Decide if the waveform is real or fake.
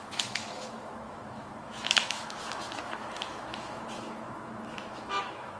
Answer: fake